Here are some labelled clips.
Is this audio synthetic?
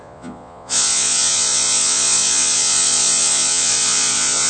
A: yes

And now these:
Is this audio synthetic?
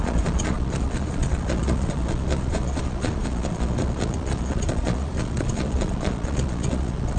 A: yes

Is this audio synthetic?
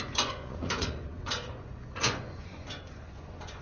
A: yes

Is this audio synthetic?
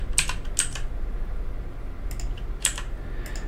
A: no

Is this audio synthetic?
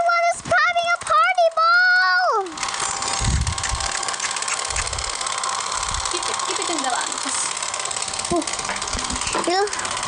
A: no